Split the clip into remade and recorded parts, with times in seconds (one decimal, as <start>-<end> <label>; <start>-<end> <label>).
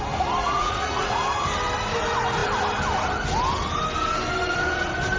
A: 0.0-0.4 recorded; 0.4-1.2 remade; 1.2-5.2 recorded